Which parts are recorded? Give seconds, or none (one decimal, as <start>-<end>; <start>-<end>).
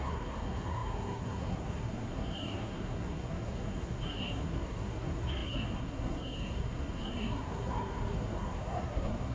none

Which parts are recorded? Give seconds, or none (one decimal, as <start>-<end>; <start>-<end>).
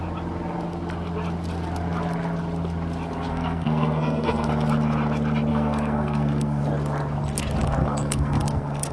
0.0-3.3; 4.5-5.5; 6.6-7.8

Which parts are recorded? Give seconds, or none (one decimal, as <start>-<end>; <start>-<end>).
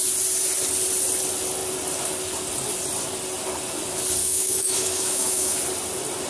0.0-4.2; 5.6-6.3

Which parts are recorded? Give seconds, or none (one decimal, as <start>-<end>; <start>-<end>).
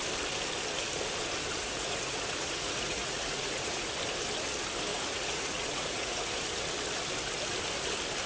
0.0-1.6; 3.9-4.9; 6.3-8.3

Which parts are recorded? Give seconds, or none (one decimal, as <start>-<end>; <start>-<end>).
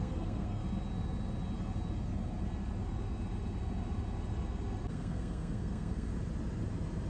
0.6-4.9; 6.1-7.1